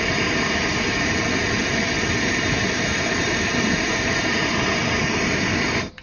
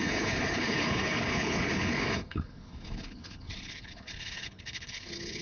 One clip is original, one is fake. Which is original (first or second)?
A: first